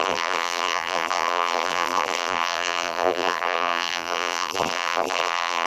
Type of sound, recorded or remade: remade